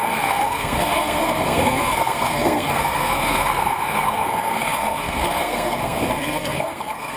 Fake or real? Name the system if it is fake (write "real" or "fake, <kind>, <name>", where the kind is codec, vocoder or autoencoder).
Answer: fake, codec, SNAC